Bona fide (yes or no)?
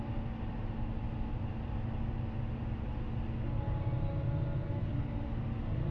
yes